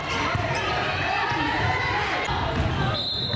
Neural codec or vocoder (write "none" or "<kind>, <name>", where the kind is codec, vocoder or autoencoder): none